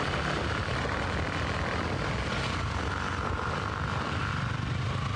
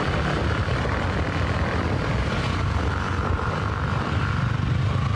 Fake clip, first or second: second